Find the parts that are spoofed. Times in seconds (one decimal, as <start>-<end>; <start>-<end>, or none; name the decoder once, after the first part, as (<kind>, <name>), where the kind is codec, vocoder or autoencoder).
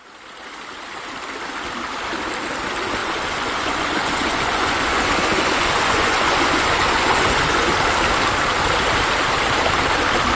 3.0-7.7 (vocoder, Vocos)